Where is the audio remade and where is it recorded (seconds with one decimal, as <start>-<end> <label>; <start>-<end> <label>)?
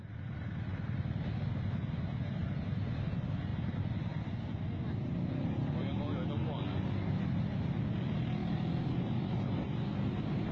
0.0-0.7 recorded; 0.7-1.5 remade; 1.5-3.5 recorded; 3.5-4.3 remade; 4.3-8.4 recorded; 8.4-10.5 remade